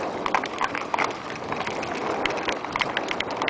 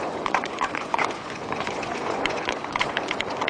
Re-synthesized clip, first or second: second